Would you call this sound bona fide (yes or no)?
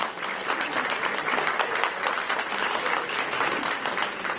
yes